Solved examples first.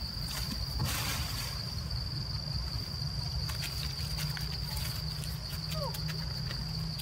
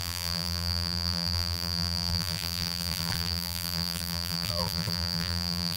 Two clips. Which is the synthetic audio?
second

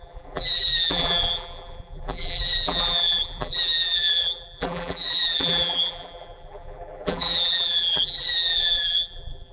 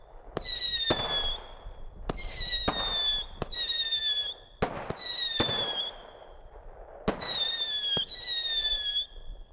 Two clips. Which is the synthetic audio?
first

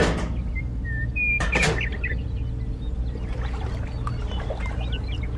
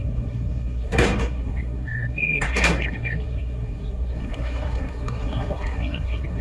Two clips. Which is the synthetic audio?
second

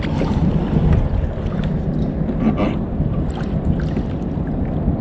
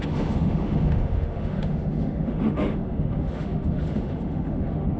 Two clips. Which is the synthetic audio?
second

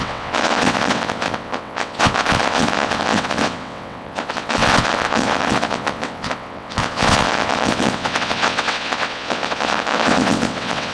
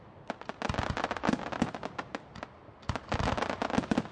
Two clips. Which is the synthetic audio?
first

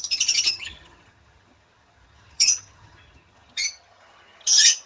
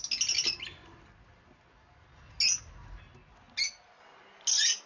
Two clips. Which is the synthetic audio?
first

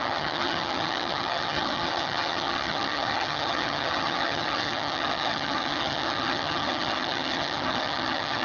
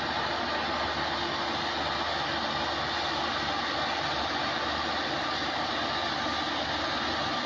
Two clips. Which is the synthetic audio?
first